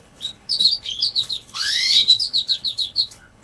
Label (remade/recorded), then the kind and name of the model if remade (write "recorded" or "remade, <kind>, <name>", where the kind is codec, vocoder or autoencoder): remade, codec, HILCodec